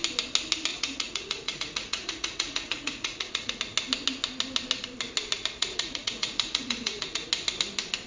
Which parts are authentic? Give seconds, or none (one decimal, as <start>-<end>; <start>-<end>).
0.0-0.7; 3.5-5.6; 7.3-8.1